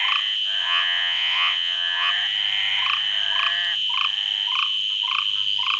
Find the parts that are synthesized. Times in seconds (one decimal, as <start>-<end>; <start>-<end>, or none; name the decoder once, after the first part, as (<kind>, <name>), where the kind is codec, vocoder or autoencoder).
0.6-2.1 (vocoder, WaveNeXt)